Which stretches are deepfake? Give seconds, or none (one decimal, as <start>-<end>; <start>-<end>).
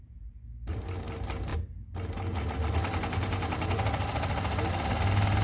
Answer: none